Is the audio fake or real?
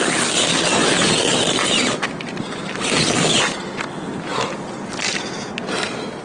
real